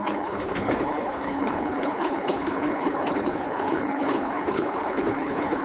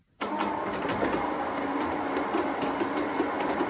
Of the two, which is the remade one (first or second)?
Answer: first